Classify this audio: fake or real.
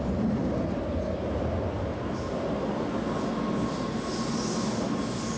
real